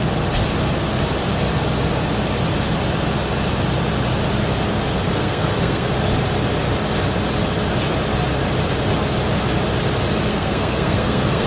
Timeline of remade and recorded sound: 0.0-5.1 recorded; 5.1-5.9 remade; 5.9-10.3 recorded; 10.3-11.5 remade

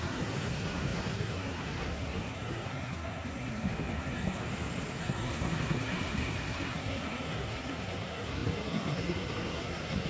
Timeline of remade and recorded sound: 0.0-4.4 remade; 4.4-5.0 recorded; 5.0-10.1 remade

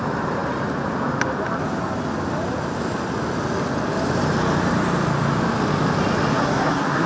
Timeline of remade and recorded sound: 0.0-6.3 recorded; 6.3-7.1 remade

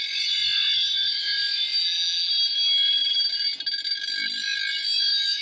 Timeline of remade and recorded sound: 0.0-1.8 recorded; 1.8-2.3 remade; 2.3-5.4 recorded

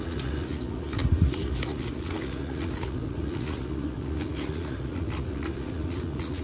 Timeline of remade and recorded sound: 0.0-6.4 remade